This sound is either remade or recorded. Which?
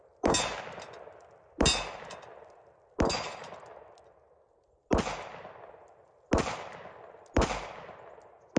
recorded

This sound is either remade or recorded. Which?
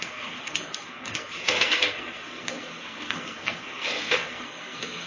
remade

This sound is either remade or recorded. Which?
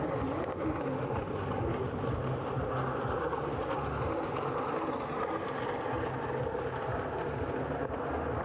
recorded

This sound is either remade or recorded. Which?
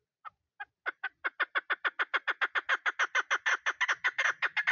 recorded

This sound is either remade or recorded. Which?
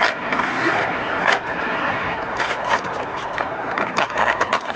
remade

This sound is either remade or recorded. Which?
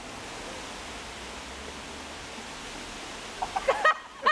recorded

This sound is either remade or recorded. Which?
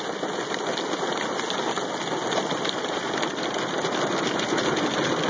recorded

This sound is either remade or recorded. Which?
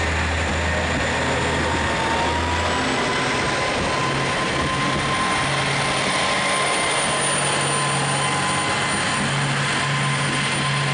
recorded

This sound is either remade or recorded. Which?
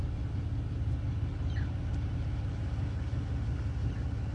recorded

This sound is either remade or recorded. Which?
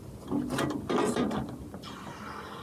recorded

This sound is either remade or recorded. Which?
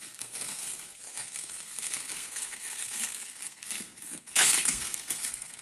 remade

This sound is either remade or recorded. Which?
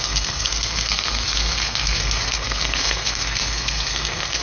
remade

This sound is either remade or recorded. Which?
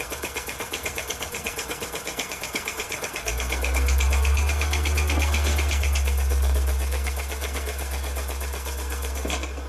remade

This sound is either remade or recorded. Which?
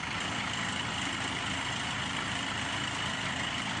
recorded